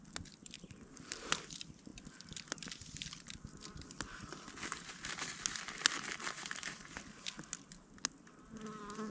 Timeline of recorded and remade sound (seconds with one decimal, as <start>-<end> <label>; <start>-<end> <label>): 0.0-0.4 recorded; 0.4-1.3 remade; 1.3-9.1 recorded